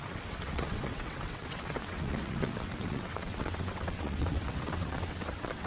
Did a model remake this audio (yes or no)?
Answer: yes